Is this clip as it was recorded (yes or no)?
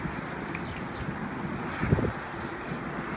yes